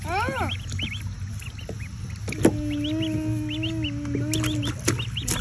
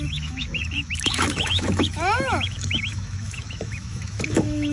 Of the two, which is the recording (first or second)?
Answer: first